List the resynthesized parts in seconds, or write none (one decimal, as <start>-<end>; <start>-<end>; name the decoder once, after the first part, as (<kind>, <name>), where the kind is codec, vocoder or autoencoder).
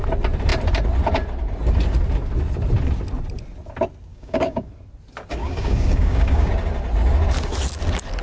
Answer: 4.1-4.7 (codec, DAC); 5.4-6.5